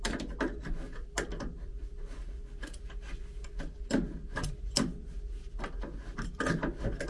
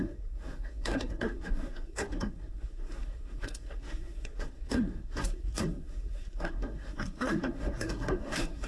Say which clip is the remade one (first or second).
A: second